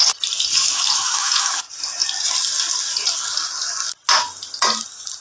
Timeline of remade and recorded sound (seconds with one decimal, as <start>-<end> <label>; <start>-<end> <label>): 0.0-0.6 recorded; 0.6-1.6 remade; 1.6-5.2 recorded